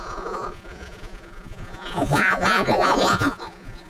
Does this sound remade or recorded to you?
remade